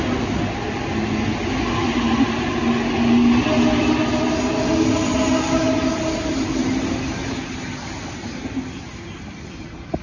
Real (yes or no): yes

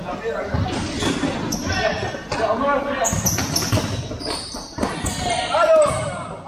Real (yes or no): yes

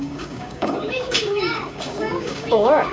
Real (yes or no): no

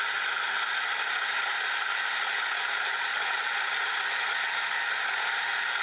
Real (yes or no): yes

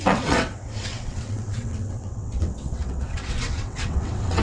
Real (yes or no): no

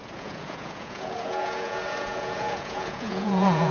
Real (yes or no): no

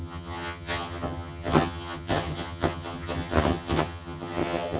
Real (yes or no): no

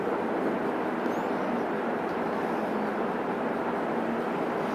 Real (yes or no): yes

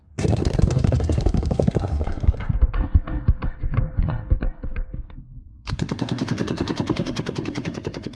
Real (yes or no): no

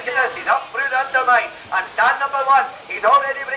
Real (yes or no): no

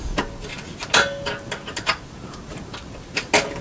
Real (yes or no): yes